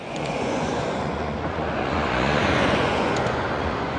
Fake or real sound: fake